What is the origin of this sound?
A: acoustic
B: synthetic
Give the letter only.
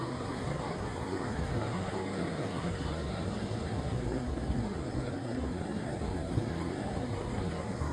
B